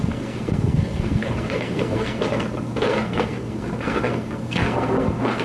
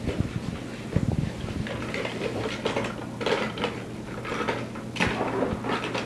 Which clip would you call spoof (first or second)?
first